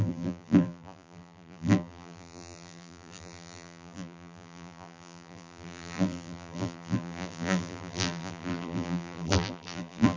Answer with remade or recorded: remade